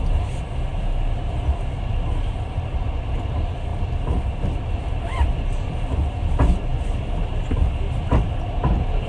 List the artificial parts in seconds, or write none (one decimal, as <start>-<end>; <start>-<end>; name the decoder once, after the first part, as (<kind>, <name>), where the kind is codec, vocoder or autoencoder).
none

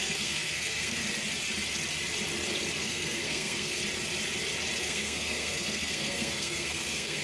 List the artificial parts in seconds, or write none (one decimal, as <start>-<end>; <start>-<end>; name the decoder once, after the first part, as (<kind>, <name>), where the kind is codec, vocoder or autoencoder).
0.0-1.0 (codec, SNAC); 2.8-3.8; 4.8-7.2